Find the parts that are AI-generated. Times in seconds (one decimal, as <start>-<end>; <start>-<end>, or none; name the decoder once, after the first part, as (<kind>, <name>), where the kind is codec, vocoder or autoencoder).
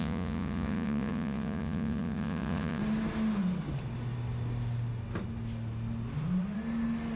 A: 0.0-2.8 (vocoder, Vocos)